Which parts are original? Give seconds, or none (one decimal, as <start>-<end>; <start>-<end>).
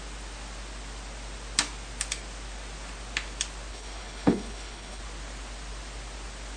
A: 0.0-3.7; 5.0-6.6